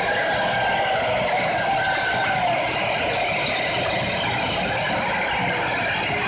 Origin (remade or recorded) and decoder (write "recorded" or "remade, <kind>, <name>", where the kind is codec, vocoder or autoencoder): recorded